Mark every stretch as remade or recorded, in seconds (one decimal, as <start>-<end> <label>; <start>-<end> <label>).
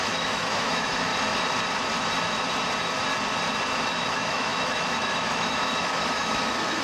0.0-1.1 remade; 1.1-3.8 recorded; 3.8-6.8 remade